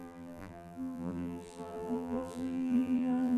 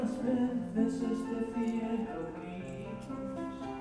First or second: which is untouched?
second